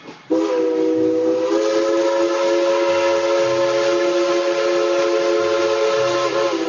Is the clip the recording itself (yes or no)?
yes